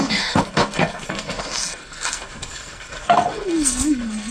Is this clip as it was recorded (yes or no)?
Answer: no